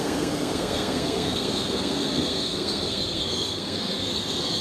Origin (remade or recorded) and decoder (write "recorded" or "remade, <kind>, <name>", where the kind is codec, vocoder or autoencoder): remade, codec, SNAC